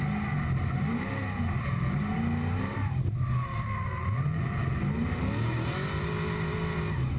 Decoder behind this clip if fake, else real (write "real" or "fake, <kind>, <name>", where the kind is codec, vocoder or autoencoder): real